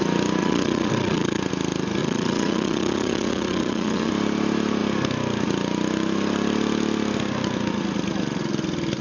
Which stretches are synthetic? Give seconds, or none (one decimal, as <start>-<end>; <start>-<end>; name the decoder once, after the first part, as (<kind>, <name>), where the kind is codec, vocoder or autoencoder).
0.4-1.4 (vocoder, Vocos); 2.0-4.1